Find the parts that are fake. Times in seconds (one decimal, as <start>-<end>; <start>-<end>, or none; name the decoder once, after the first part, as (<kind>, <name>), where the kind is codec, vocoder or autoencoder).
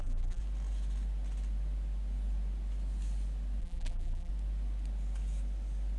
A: 0.0-0.4 (vocoder, BigVGAN v2); 3.6-4.3